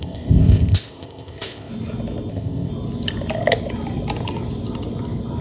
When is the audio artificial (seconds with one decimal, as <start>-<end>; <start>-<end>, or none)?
0.0-1.7; 2.3-2.7

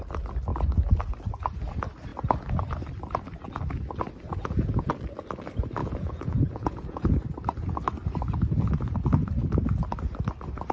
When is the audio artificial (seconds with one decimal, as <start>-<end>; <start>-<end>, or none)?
4.3-4.9; 5.8-7.0

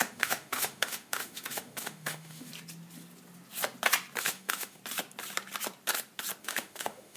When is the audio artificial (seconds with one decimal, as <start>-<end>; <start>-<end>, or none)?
0.0-2.5; 4.2-4.8; 6.4-7.2

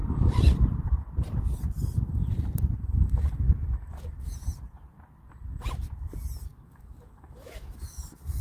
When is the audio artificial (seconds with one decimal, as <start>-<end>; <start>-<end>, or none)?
6.5-8.4

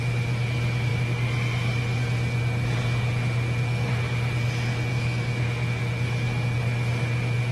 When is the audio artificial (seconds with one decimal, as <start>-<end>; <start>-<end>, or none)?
4.9-5.8

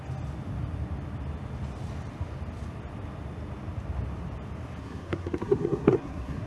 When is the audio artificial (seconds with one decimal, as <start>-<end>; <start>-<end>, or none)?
4.8-6.5

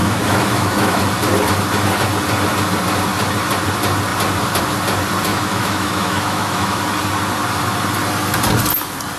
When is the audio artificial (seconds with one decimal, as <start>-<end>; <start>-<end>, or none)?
0.0-1.0; 5.3-6.8